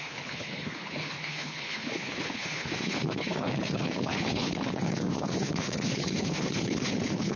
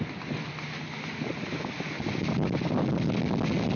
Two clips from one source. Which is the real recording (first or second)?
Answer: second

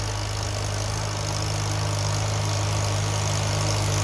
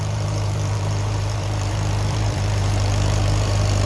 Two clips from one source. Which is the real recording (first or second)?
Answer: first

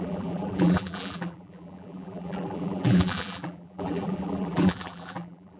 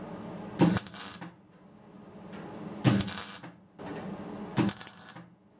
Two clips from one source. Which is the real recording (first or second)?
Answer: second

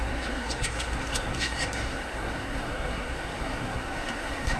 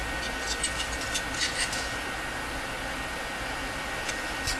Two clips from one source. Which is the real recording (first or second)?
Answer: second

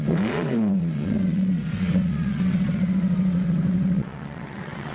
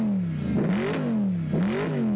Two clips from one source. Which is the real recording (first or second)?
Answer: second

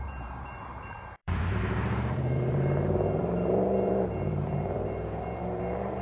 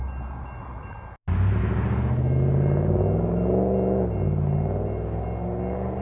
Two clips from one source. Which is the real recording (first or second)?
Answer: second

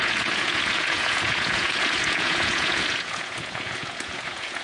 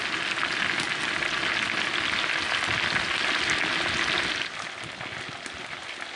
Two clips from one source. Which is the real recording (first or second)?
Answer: second